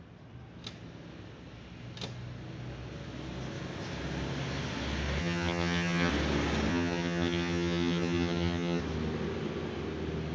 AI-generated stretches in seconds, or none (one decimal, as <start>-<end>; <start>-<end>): 5.2-6.1; 6.7-8.8